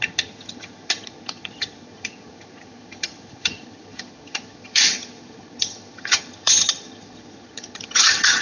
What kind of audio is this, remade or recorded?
remade